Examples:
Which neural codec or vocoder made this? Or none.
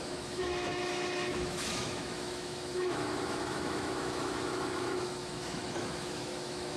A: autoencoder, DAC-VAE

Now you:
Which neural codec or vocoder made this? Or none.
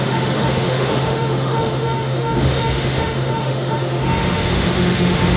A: autoencoder, DAC-VAE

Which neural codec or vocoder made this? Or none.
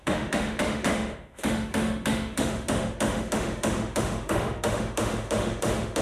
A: autoencoder, DAC-VAE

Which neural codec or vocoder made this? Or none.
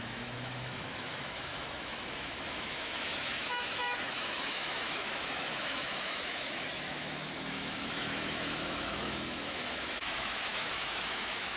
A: autoencoder, DAC-VAE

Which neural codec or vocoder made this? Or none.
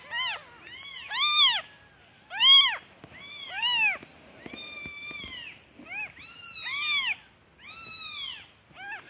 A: none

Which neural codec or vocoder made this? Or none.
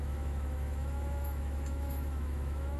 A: autoencoder, DAC-VAE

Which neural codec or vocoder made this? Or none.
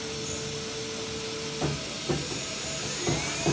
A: none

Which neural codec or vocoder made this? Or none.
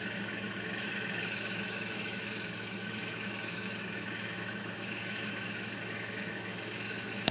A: autoencoder, DAC-VAE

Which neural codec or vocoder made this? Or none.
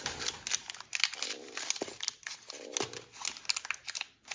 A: none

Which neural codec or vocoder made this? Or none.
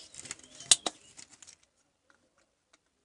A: none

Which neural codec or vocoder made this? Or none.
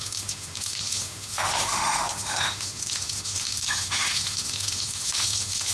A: autoencoder, DAC-VAE